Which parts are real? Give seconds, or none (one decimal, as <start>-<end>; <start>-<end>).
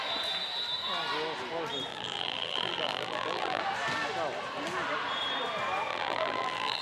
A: 0.0-1.9; 3.6-5.9